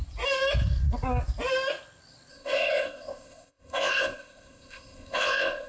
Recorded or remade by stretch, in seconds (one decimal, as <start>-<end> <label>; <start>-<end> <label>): 0.0-2.3 recorded; 2.3-5.7 remade